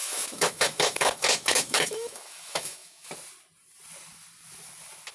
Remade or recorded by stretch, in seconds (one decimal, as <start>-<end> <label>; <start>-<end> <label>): 0.0-3.1 remade; 3.1-5.1 recorded

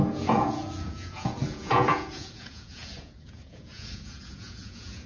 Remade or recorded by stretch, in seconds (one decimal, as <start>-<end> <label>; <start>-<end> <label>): 0.0-5.1 remade

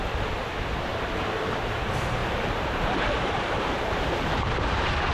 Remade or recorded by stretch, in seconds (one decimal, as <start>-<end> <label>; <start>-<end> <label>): 0.0-0.9 recorded; 0.9-1.8 remade; 1.8-2.2 recorded; 2.2-5.1 remade